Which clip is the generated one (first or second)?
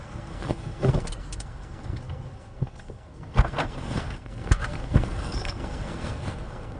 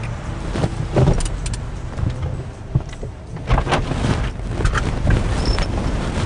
first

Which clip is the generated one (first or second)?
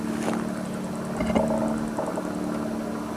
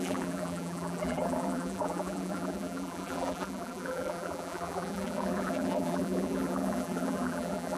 second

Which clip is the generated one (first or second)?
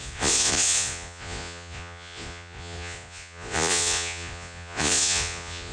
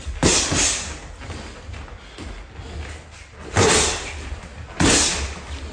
first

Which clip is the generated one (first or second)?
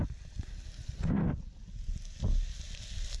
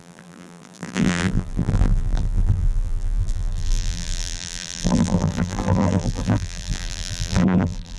second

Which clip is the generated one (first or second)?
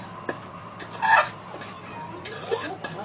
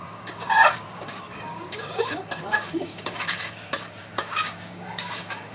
second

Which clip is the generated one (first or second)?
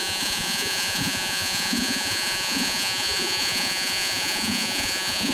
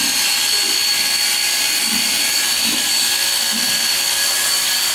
first